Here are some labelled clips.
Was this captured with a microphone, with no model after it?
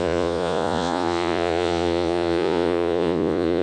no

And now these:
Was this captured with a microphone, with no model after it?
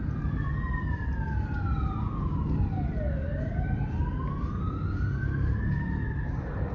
yes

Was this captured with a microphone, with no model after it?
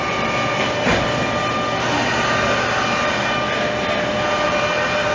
yes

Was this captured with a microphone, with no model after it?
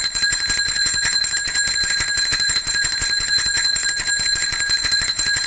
no